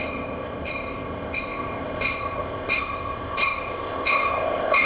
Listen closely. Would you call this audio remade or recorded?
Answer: remade